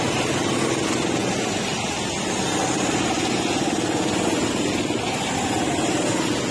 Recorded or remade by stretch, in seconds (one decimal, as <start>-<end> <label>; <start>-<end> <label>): 0.0-6.5 recorded